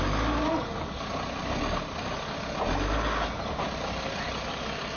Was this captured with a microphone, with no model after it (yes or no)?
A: yes